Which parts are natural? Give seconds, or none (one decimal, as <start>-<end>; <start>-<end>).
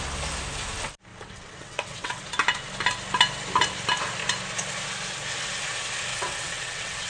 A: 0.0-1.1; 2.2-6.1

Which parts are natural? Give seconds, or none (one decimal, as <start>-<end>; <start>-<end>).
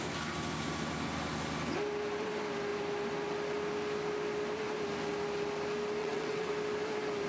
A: 0.0-6.0; 6.5-7.3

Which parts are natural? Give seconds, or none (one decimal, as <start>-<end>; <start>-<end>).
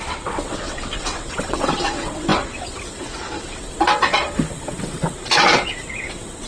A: none